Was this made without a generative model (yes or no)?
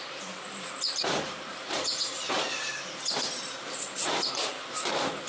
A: no